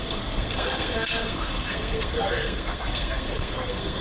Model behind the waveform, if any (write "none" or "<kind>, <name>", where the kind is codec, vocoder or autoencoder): codec, SNAC